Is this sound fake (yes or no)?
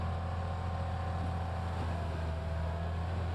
no